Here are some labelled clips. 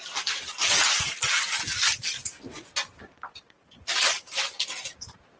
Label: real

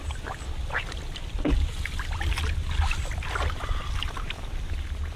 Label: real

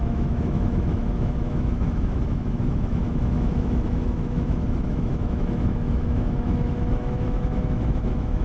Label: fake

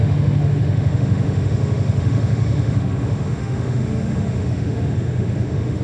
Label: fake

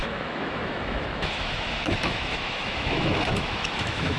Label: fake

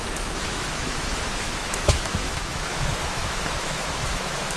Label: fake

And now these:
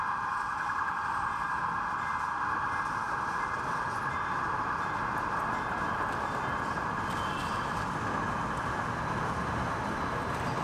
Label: real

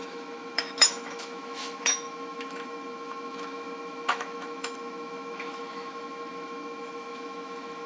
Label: fake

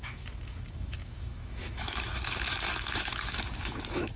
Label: fake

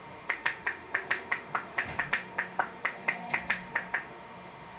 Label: fake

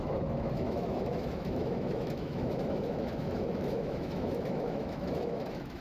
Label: fake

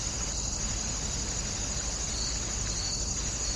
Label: real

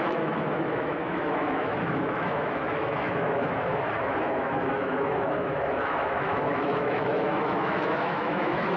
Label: fake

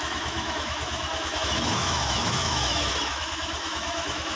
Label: fake